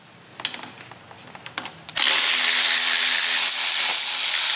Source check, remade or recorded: recorded